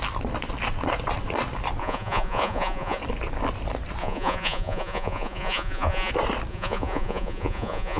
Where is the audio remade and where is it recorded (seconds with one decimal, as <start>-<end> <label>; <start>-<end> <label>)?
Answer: 0.0-1.8 recorded; 1.8-3.0 remade; 3.0-4.0 recorded; 4.0-6.1 remade; 6.1-6.5 recorded; 6.5-8.0 remade